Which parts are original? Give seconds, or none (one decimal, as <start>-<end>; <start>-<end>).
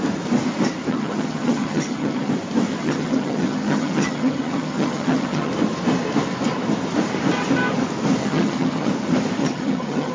0.0-0.9; 2.3-2.8; 5.5-8.2; 8.9-9.4